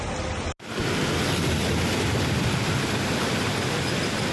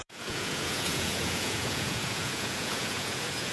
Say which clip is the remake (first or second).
second